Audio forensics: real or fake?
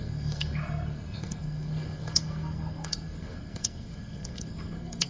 fake